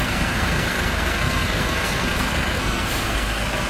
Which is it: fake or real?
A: fake